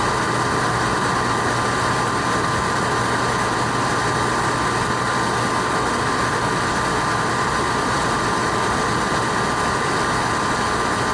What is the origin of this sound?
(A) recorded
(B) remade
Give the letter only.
A